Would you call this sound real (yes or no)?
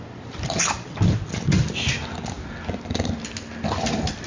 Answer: yes